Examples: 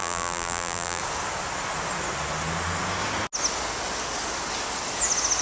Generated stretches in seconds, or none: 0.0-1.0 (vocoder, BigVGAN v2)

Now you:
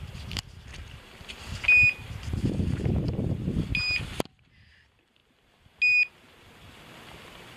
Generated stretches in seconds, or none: none

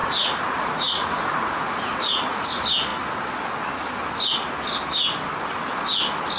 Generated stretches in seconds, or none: 0.0-2.5 (vocoder, Vocos)

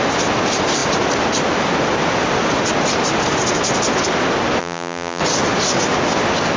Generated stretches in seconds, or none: 4.6-5.2 (vocoder, BigVGAN v2)